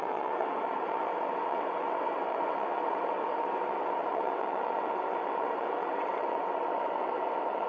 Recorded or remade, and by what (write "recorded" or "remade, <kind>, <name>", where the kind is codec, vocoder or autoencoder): remade, vocoder, WaveNeXt